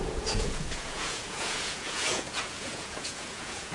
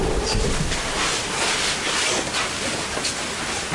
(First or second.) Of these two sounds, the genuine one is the second